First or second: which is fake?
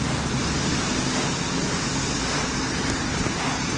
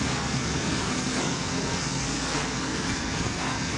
second